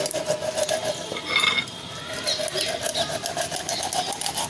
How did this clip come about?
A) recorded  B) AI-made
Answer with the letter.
A